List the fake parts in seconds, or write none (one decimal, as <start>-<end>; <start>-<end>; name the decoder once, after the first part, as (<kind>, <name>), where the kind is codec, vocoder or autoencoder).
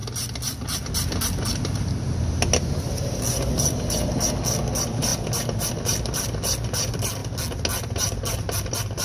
none